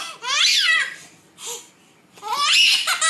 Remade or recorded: recorded